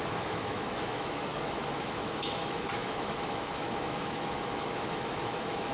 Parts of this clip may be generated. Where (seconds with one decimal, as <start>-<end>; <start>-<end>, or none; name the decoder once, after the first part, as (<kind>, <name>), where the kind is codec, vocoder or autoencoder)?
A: 0.0-5.7 (autoencoder, DAC-VAE)